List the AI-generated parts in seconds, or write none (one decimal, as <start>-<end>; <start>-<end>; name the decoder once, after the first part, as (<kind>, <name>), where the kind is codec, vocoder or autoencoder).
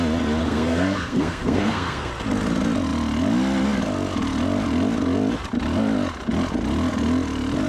0.4-2.1 (codec, SNAC)